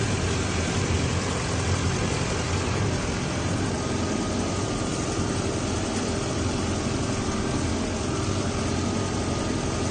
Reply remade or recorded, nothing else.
remade